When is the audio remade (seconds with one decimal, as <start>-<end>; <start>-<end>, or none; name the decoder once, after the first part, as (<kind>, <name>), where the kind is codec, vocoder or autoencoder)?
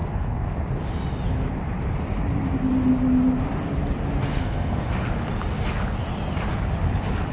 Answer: 0.0-0.7 (codec, SNAC); 4.3-4.9